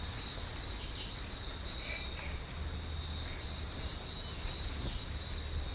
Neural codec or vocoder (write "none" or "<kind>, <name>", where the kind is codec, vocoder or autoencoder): none